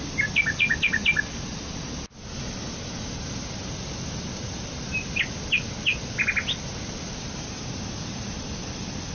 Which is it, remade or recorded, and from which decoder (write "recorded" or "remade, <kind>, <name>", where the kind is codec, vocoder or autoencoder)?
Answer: recorded